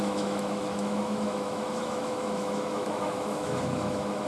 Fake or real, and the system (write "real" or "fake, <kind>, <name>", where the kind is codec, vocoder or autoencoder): fake, autoencoder, DAC-VAE